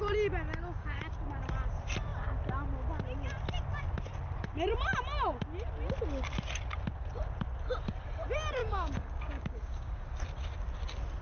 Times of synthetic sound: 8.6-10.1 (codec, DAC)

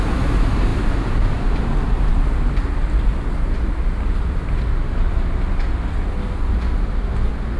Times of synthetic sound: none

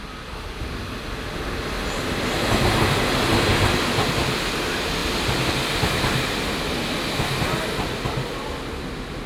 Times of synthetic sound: none

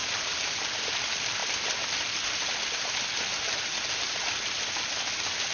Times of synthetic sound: 0.0-0.5 (vocoder, BigVGAN v2)

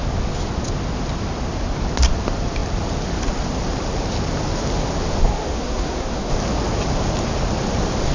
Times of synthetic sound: 5.2-6.3 (codec, SNAC)